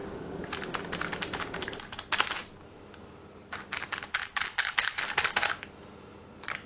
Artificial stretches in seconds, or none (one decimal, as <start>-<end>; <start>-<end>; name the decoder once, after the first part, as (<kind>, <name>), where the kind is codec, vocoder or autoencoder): 4.1-5.0 (codec, HILCodec)